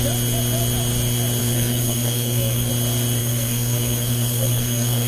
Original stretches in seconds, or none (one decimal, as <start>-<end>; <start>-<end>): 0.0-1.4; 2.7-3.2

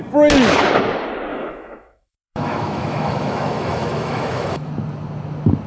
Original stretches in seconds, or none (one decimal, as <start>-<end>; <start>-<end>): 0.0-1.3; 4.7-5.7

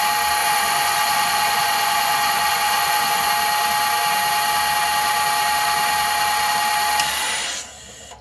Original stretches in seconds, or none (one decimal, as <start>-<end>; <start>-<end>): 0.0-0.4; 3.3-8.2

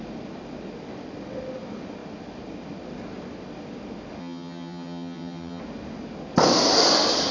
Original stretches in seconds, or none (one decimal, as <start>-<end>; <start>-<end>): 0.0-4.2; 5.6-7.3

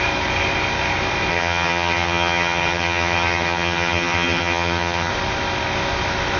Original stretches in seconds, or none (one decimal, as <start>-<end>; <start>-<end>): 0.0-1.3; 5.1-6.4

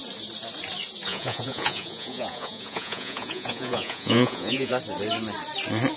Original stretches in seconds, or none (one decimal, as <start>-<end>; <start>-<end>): 0.0-1.1; 4.7-6.0

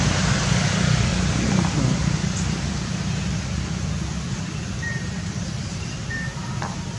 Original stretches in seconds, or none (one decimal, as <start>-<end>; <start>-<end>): none